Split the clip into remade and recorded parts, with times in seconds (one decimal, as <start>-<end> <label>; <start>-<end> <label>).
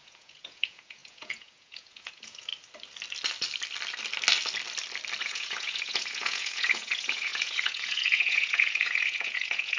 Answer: 0.0-2.5 remade; 2.5-5.2 recorded; 5.2-9.8 remade